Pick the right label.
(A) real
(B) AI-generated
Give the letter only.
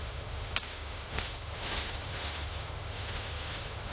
B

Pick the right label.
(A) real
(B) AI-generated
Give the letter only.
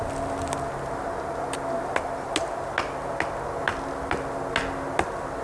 A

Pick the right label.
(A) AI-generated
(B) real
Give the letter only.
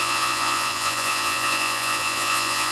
A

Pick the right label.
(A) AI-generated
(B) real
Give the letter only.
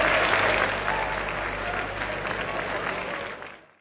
B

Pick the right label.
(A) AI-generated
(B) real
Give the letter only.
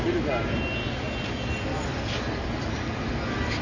B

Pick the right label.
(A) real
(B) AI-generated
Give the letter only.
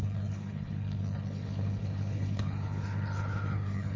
B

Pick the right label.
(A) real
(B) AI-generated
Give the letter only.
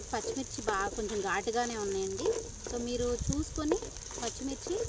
A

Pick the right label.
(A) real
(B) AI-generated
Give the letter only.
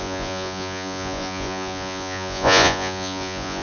B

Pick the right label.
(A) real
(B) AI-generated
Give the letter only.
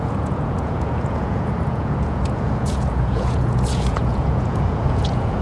B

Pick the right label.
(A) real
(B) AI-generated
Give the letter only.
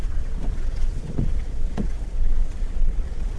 B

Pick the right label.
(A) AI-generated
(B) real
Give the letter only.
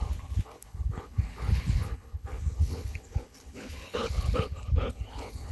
A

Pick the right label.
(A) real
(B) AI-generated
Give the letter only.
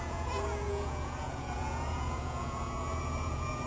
B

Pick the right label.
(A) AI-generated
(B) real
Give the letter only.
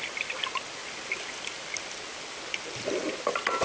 B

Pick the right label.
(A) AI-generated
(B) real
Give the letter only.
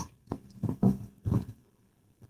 A